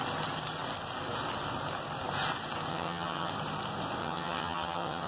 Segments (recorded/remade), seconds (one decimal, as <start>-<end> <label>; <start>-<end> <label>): 0.0-2.7 recorded; 2.7-3.3 remade; 3.3-4.0 recorded; 4.0-5.1 remade